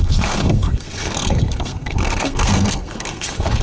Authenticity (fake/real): fake